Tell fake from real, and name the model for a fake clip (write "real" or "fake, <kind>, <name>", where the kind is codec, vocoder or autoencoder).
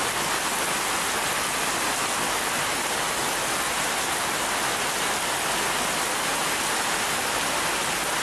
real